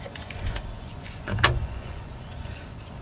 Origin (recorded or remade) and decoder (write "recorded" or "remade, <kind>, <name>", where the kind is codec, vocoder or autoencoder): remade, vocoder, Vocos